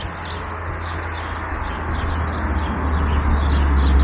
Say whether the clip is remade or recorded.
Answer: recorded